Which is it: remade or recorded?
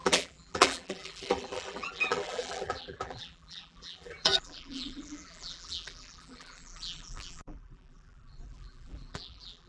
remade